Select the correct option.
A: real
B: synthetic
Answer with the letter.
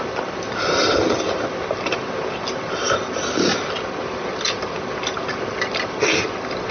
A